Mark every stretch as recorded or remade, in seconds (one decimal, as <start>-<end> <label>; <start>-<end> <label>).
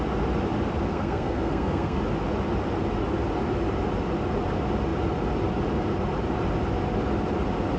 0.0-0.9 recorded; 0.9-2.0 remade; 2.0-7.8 recorded